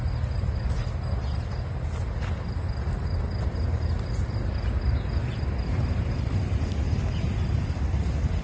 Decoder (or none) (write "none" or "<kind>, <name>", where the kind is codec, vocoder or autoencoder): none